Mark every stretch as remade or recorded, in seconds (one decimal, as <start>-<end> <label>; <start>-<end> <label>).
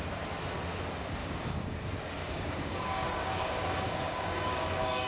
0.0-1.2 recorded; 1.2-1.8 remade; 1.8-2.2 recorded; 2.2-5.1 remade